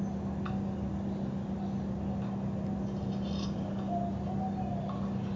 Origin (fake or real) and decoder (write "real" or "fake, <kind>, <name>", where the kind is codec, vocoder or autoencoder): real